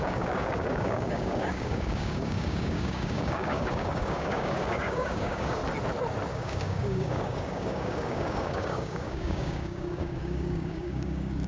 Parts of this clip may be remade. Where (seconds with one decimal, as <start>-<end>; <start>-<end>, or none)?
0.0-5.6; 6.3-11.5